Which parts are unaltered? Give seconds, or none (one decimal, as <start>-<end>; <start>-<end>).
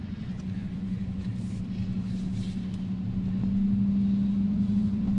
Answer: 1.3-4.4